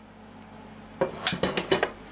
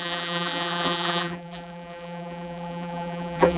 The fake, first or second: second